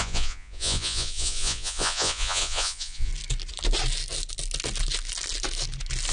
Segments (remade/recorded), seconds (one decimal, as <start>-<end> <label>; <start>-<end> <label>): 0.0-3.1 remade; 3.1-6.1 recorded

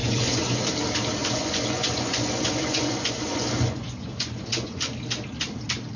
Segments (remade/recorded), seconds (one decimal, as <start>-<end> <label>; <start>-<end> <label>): 0.0-0.6 remade; 0.6-1.2 recorded; 1.2-4.8 remade; 4.8-6.0 recorded

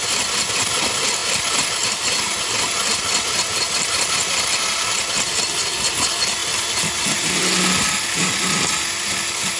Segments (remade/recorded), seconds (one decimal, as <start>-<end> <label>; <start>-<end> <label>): 0.0-9.6 recorded

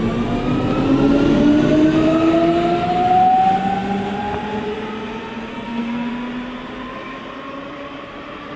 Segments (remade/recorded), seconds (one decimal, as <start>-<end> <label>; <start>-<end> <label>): 0.0-5.5 recorded; 5.5-6.1 remade; 6.1-8.6 recorded